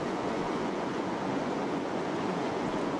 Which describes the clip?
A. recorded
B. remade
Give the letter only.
B